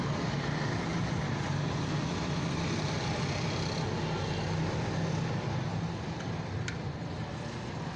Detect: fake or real real